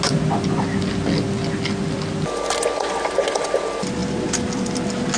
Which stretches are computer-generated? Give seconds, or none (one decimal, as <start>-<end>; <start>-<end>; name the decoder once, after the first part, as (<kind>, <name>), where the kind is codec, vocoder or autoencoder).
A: none